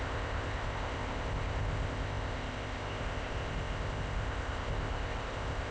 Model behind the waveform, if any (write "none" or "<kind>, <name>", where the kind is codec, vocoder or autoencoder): codec, ZipCodec